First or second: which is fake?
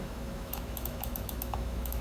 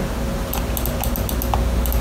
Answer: first